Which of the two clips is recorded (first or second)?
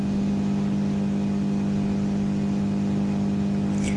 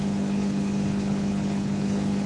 first